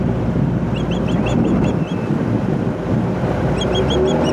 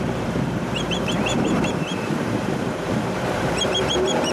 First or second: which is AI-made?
second